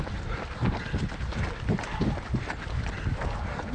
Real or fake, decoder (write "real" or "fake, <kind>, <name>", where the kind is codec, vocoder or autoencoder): real